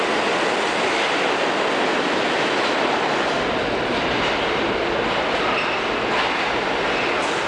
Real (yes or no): yes